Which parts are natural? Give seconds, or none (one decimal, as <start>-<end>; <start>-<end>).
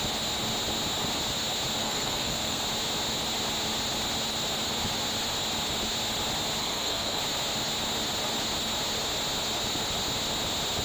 0.0-1.8; 2.6-6.6; 7.2-10.8